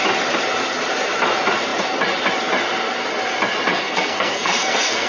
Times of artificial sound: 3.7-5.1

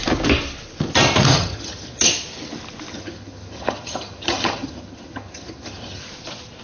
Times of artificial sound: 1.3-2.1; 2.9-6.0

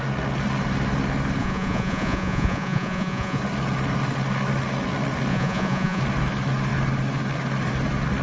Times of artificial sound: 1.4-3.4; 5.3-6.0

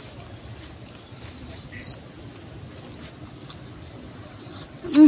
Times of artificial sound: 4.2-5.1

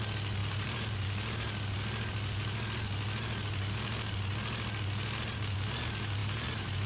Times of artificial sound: 0.4-0.9; 6.2-6.9

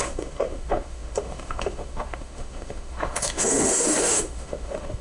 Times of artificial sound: 0.0-5.0

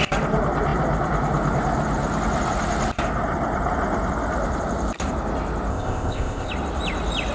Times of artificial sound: 5.7-6.5